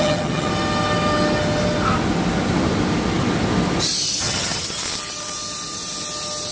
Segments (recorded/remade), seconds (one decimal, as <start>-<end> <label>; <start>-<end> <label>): 0.0-0.5 remade; 0.5-4.2 recorded; 4.2-4.8 remade; 4.8-6.5 recorded